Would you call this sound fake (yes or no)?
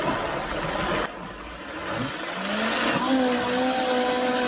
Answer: no